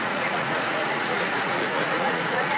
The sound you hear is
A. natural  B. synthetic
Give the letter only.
B